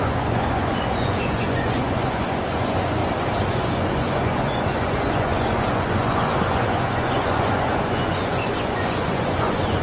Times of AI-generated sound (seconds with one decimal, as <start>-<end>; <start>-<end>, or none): 0.0-3.0; 3.5-9.8